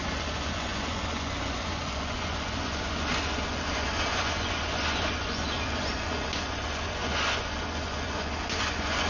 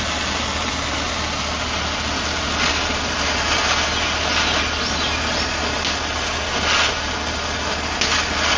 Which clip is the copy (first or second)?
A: first